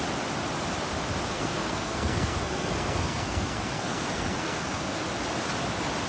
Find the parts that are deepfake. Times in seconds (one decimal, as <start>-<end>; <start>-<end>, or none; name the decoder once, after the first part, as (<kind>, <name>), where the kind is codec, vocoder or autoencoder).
1.3-5.0 (codec, SNAC)